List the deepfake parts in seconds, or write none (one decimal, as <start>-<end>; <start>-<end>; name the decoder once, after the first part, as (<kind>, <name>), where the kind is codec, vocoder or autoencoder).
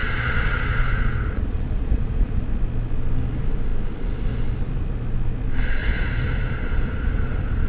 0.0-2.4 (vocoder, Vocos); 5.8-7.7